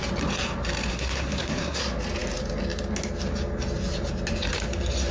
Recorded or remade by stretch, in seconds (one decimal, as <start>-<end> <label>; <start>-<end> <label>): 0.0-0.9 recorded; 0.9-1.8 remade; 1.8-5.1 recorded